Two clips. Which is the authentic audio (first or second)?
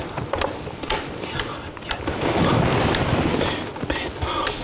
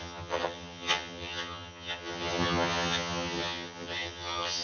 first